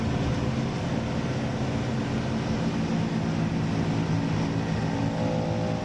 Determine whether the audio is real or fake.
real